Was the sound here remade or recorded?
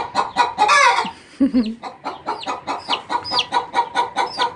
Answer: recorded